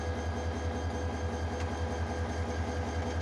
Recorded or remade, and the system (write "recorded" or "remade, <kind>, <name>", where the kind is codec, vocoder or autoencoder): recorded